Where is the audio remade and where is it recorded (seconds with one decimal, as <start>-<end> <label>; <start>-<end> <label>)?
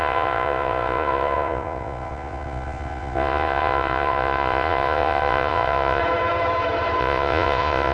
0.0-6.0 remade; 6.0-7.0 recorded; 7.0-7.9 remade